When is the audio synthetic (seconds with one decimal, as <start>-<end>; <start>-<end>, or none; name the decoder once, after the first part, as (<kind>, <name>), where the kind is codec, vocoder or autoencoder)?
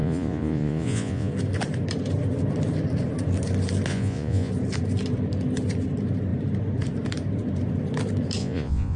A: 0.0-1.3 (vocoder, Vocos); 3.9-4.5; 8.4-9.0